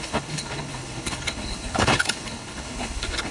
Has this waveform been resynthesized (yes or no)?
yes